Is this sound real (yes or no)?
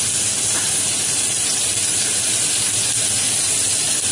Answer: yes